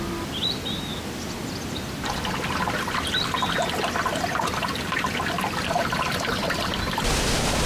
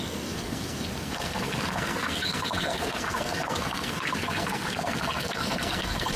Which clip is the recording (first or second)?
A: first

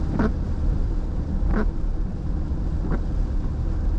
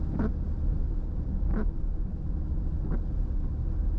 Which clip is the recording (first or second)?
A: second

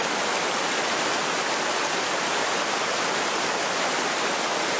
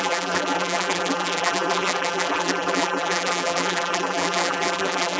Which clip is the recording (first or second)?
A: first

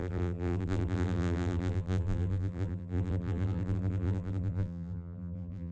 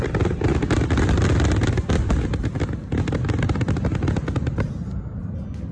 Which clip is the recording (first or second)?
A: second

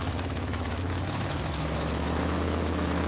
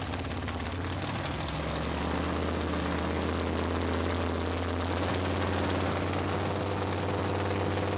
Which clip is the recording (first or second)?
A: second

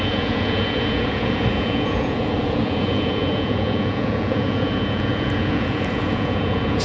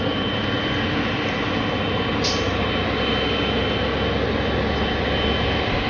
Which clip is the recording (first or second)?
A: second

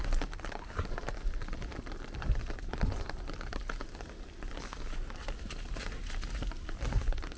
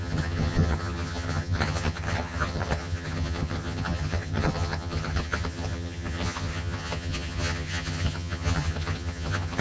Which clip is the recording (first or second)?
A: first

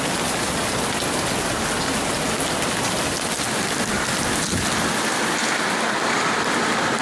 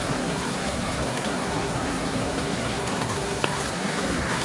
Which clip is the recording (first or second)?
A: first